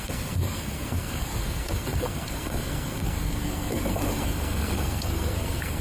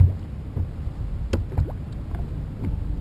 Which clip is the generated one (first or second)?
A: first